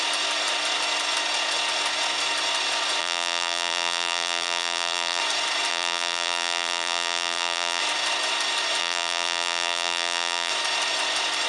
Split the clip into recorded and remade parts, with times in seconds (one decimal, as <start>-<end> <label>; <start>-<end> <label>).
0.0-3.0 recorded; 3.0-5.2 remade; 5.2-5.7 recorded; 5.7-7.8 remade; 7.8-8.8 recorded; 8.8-10.5 remade; 10.5-11.5 recorded